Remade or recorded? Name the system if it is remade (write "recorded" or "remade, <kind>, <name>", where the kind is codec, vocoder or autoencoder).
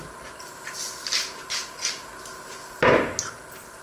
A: recorded